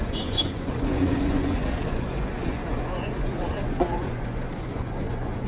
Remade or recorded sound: remade